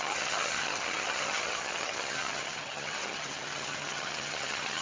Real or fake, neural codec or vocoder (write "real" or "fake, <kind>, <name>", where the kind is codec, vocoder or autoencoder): fake, vocoder, HiFi-GAN